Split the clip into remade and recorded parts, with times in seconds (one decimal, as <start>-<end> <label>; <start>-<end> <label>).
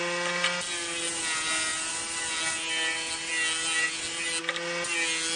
0.0-5.4 recorded